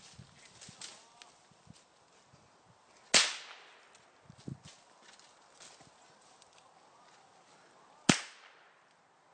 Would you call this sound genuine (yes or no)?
yes